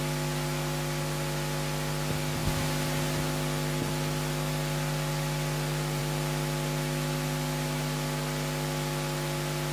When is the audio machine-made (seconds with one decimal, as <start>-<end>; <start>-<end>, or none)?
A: none